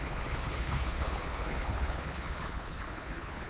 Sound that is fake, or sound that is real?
fake